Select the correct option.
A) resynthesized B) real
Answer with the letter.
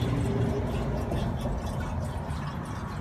B